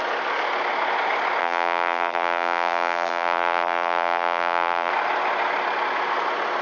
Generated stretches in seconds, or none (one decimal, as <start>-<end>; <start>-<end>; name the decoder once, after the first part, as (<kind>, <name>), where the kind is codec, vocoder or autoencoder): 1.4-4.9 (vocoder, BigVGAN v2)

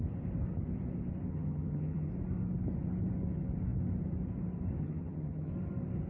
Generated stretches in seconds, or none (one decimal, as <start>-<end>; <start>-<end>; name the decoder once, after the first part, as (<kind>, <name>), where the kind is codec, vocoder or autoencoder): 1.3-2.1 (vocoder, HiFi-GAN); 4.8-5.5

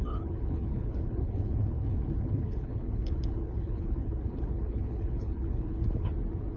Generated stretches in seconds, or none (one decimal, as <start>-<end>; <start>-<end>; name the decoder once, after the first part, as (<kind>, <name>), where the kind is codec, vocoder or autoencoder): 0.0-6.1 (codec, HILCodec)